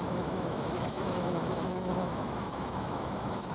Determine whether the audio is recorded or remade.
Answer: remade